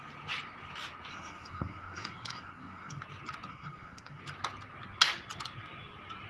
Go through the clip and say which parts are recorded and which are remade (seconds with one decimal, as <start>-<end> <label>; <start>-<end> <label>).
0.0-1.1 recorded; 1.1-3.0 remade; 3.0-3.5 recorded; 3.5-4.2 remade; 4.2-6.3 recorded